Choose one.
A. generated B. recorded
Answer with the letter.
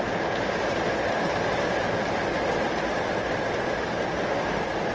B